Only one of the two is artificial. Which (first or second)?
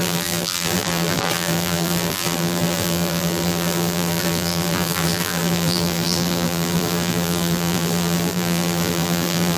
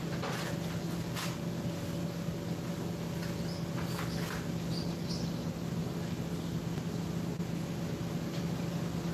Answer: first